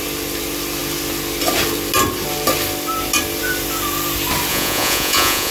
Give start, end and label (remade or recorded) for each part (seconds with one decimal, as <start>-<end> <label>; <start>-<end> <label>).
0.0-4.5 recorded; 4.5-5.5 remade